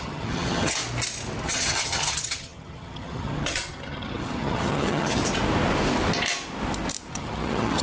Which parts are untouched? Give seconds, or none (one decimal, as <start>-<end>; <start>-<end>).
0.8-1.4; 5.2-7.1